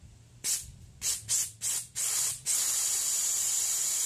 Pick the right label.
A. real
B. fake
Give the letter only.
A